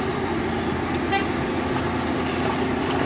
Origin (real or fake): real